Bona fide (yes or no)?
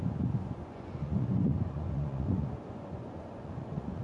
no